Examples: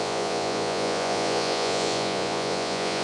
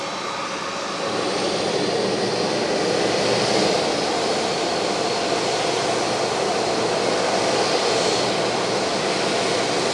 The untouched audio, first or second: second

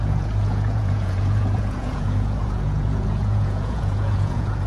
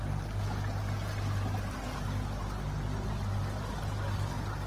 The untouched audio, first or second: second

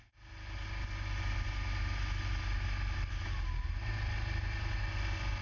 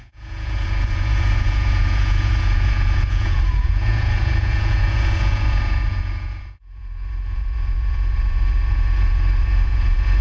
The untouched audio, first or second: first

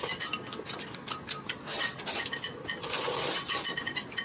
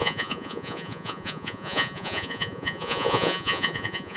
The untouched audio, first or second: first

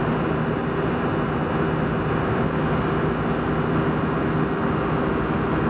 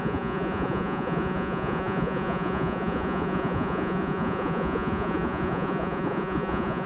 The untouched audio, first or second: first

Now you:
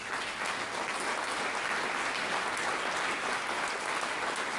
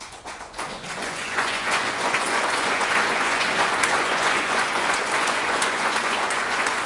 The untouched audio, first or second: first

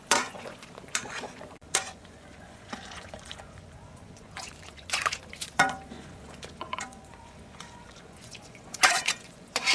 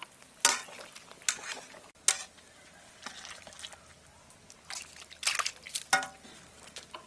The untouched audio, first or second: second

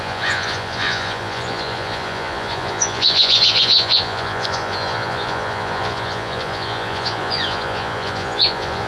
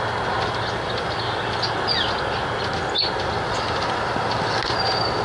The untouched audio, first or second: second